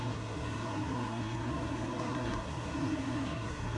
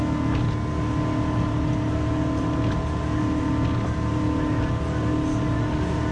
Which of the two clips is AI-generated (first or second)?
first